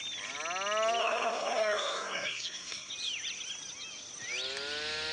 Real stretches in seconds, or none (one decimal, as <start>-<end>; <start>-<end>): 0.0-1.0; 2.9-5.1